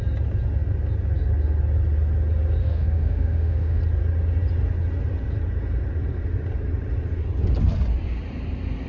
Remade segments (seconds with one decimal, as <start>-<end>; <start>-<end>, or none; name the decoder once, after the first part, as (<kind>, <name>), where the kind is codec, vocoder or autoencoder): 2.6-3.8 (autoencoder, DAC-VAE)